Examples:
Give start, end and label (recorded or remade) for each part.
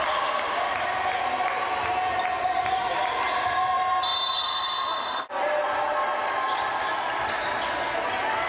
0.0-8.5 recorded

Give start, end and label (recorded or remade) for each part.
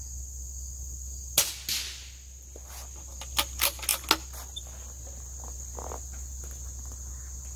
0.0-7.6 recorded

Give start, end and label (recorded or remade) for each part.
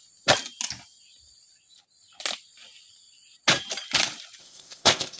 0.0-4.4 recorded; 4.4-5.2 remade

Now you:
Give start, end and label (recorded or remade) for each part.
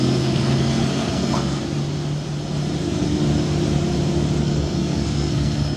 0.0-1.6 remade; 1.6-2.8 recorded; 2.8-3.2 remade; 3.2-4.4 recorded; 4.4-5.8 remade